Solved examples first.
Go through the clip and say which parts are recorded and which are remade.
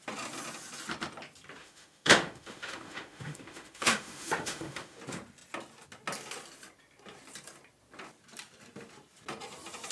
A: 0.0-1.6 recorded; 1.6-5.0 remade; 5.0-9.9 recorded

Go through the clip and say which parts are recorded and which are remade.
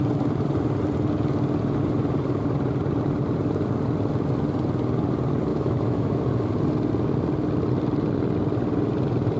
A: 0.0-5.5 recorded; 5.5-6.2 remade; 6.2-9.4 recorded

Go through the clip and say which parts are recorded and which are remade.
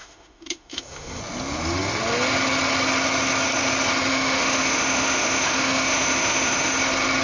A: 0.0-1.2 remade; 1.2-4.1 recorded; 4.1-6.7 remade; 6.7-7.2 recorded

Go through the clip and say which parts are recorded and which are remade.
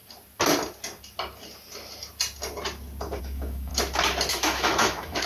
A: 0.0-3.2 recorded; 3.2-3.7 remade; 3.7-4.3 recorded; 4.3-5.3 remade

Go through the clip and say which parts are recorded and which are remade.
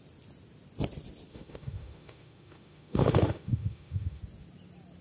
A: 0.0-1.3 recorded; 1.3-4.2 remade; 4.2-5.0 recorded